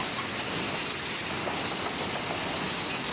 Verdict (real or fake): real